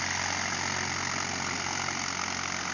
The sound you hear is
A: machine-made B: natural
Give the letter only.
B